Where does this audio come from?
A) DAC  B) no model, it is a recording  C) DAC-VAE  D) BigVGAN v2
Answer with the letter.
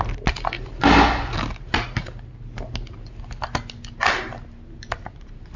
B